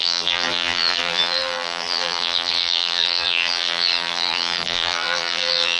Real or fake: fake